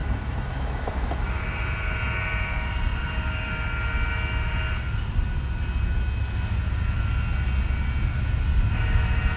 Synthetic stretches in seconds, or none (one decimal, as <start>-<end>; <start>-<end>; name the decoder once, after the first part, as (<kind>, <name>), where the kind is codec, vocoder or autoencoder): 0.0-1.4 (autoencoder, DAC-VAE)